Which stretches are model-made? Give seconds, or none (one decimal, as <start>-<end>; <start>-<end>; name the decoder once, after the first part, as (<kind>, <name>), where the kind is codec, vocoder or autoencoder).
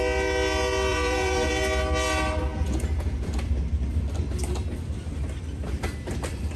0.9-1.5 (vocoder, Vocos); 2.5-3.3